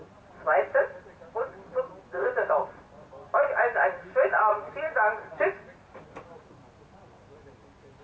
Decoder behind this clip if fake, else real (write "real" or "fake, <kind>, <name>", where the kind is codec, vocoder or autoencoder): real